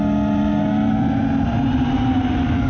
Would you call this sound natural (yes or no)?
yes